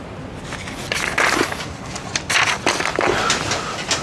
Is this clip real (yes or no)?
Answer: yes